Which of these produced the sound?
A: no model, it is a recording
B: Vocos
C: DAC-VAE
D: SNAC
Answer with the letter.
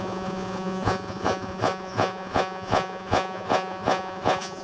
B